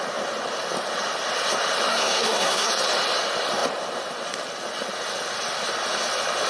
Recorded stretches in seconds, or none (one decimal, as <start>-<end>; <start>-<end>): 0.0-1.9; 2.7-6.5